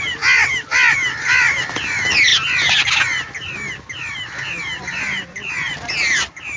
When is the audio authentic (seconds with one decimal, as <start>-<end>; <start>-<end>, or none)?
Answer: 0.0-6.6